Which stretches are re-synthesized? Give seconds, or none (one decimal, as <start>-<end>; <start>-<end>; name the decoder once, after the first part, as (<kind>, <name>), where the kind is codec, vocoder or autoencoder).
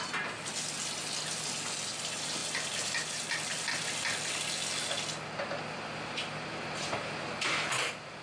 none